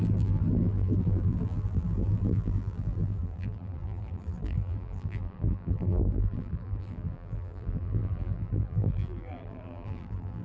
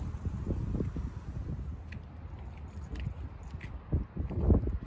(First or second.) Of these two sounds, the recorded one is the second